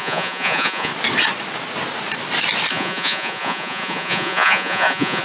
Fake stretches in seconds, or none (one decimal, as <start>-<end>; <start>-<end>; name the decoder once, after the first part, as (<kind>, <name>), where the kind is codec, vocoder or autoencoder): 0.0-0.9 (vocoder, Vocos); 2.7-5.2